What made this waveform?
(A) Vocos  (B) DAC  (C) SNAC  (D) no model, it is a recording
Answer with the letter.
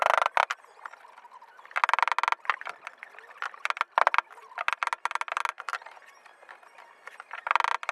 D